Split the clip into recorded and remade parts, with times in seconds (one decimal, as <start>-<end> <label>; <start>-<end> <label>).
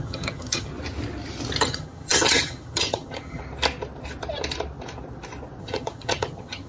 0.0-0.7 remade; 0.7-1.6 recorded; 1.6-3.4 remade; 3.4-5.6 recorded; 5.6-6.7 remade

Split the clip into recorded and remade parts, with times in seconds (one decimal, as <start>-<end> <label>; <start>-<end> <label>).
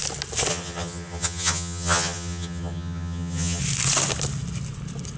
0.0-0.5 recorded; 0.5-3.6 remade; 3.6-5.2 recorded